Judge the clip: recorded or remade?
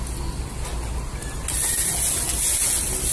recorded